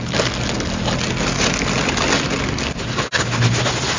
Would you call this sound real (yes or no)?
yes